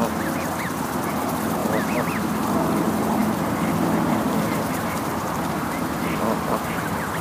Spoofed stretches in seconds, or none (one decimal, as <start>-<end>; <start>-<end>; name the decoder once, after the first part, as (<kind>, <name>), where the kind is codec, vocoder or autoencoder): 0.0-1.6 (vocoder, BigVGAN v2); 2.5-7.2